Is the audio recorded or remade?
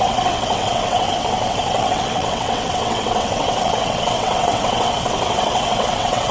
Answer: remade